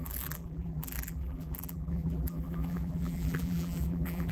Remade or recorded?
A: remade